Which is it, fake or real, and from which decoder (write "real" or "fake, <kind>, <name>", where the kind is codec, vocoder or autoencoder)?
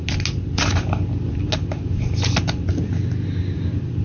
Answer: real